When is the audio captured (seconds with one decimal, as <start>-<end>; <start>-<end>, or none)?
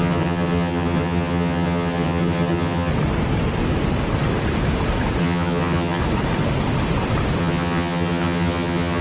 2.9-5.2; 6.0-7.4